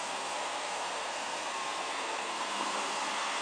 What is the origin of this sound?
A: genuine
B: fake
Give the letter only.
B